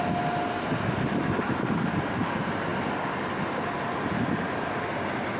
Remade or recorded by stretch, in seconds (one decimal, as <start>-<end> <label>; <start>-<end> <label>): 0.0-5.4 recorded